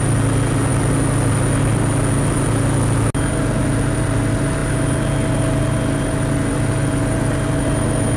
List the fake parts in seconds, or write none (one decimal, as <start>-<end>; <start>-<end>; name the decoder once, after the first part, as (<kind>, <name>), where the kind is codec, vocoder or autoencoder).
none